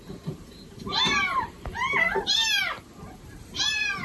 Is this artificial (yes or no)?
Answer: yes